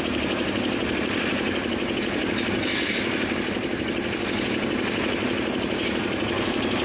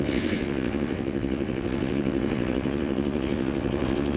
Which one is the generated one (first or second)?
second